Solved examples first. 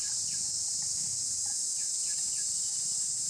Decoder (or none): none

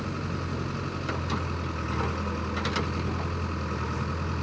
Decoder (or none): none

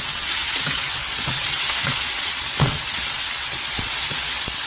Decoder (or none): vocoder, WaveNeXt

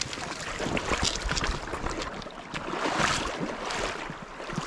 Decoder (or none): none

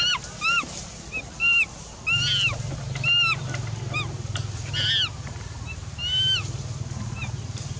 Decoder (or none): none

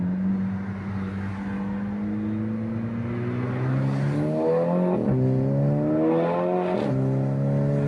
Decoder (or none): none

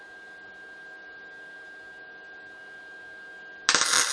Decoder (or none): none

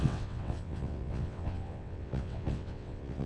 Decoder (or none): vocoder, WaveNeXt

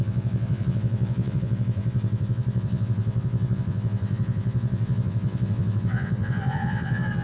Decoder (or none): vocoder, WaveNeXt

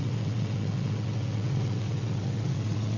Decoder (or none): vocoder, WaveNeXt